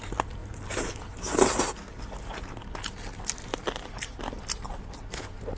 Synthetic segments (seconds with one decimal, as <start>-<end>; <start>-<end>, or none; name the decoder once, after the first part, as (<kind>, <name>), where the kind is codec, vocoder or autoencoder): 0.4-1.6 (vocoder, BigVGAN v2)